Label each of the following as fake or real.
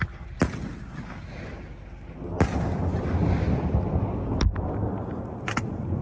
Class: real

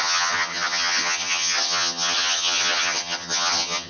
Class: fake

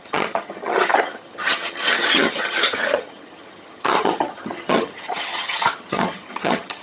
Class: fake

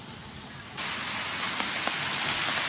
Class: real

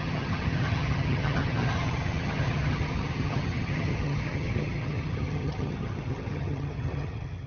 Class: fake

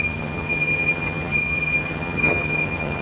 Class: fake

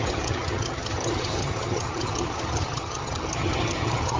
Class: fake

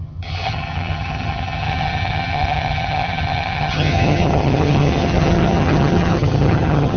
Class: fake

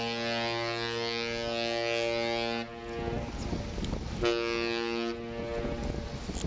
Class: real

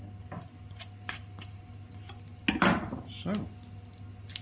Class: real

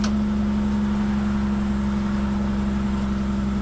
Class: real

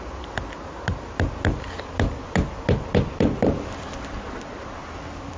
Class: real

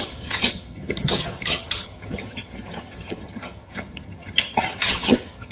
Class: fake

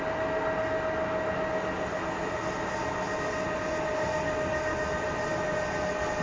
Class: real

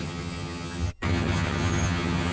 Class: fake